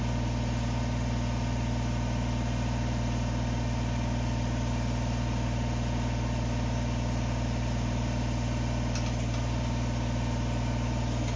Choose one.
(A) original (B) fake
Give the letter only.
A